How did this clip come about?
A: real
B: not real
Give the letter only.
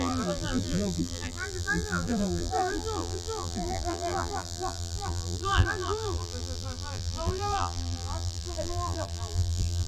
B